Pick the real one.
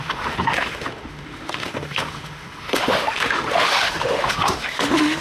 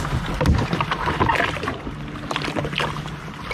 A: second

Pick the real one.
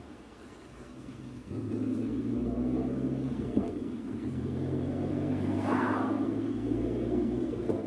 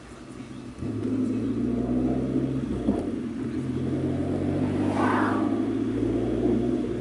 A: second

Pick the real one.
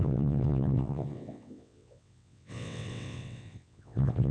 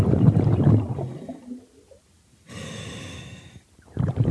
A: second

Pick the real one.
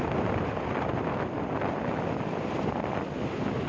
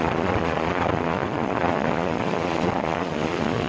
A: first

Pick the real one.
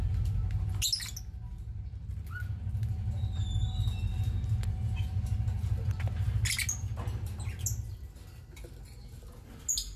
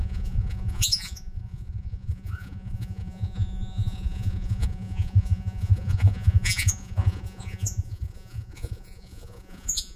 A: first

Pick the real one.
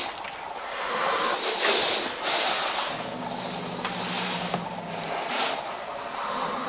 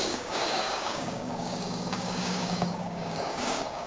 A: first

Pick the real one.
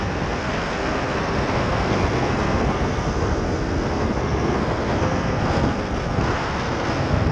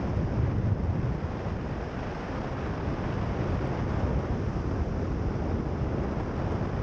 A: second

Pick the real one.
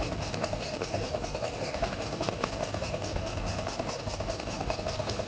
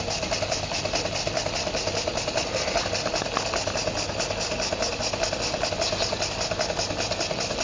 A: second